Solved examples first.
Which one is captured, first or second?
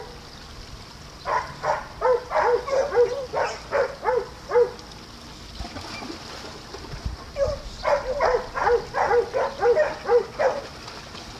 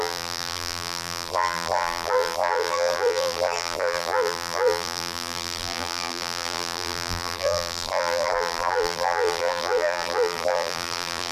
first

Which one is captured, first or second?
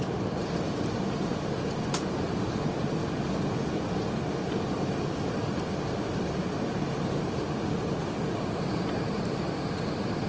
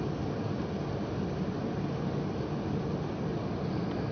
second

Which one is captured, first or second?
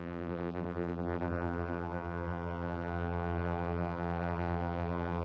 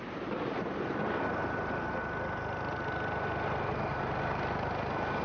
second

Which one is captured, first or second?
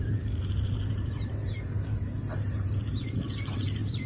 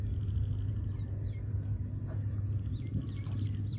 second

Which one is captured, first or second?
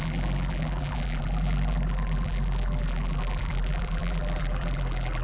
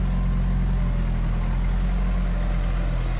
second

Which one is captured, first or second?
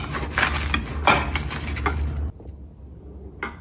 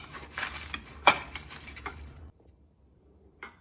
first